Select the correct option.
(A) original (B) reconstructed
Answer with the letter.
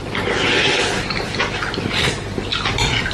A